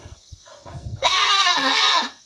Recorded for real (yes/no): no